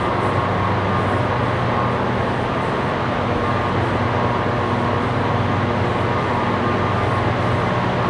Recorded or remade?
recorded